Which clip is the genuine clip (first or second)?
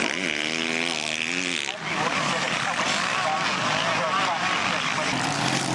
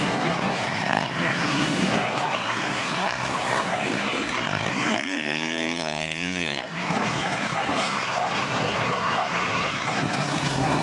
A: first